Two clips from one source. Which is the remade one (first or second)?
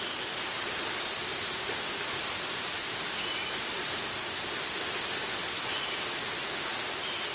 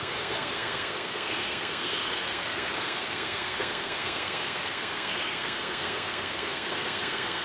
second